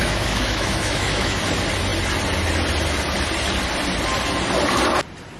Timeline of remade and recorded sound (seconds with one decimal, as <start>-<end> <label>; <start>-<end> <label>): 0.0-1.4 remade; 1.4-5.4 recorded